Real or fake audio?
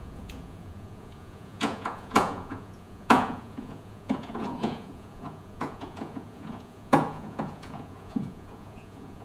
fake